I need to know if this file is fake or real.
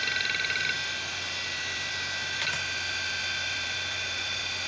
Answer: fake